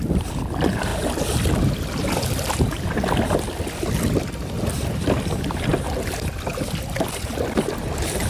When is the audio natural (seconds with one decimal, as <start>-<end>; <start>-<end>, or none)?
0.0-8.3